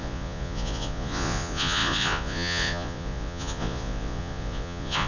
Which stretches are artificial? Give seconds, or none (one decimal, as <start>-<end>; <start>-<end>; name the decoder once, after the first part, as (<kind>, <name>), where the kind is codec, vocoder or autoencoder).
0.0-5.1 (vocoder, Vocos)